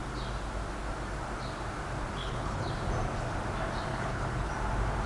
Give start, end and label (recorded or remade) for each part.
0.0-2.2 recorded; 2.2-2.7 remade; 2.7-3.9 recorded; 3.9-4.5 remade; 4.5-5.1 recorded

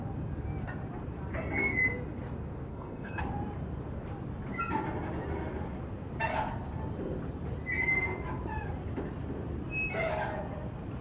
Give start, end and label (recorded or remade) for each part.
0.0-2.7 recorded; 2.7-3.2 remade; 3.2-11.0 recorded